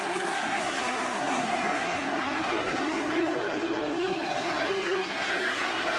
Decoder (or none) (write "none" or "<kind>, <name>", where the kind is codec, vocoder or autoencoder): codec, SNAC